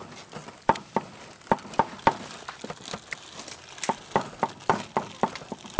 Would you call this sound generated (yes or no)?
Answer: no